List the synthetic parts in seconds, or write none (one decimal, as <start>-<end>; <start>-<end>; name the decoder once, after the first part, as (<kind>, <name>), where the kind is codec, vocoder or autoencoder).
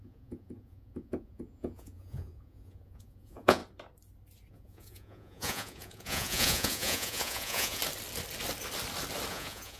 0.0-3.6 (vocoder, Vocos); 4.5-7.8; 9.3-9.8